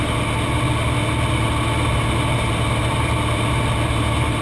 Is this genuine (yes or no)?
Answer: yes